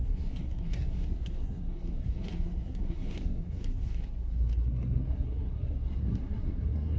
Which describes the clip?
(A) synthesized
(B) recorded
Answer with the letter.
A